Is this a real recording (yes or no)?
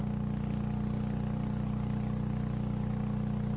yes